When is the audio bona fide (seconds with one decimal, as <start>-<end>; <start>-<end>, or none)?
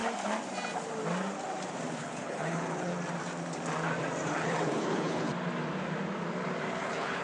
0.0-2.0; 2.9-4.3; 5.3-6.8